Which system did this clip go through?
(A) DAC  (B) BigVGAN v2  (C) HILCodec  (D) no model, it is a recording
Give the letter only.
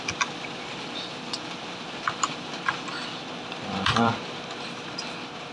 B